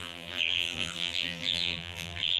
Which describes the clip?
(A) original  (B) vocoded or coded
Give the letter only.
B